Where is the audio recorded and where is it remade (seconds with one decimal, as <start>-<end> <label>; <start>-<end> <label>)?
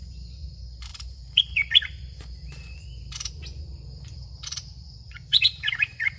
0.0-6.2 remade